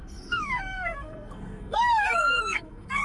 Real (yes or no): no